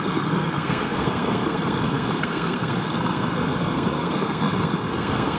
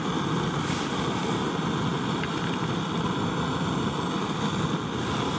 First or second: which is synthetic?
first